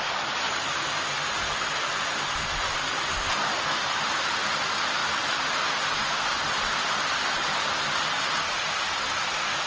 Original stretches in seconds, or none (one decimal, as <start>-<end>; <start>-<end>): 0.0-9.7